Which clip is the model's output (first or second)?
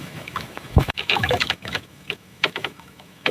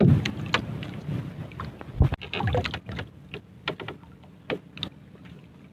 first